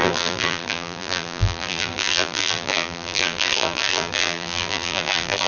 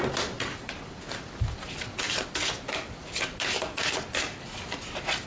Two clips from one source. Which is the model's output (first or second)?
first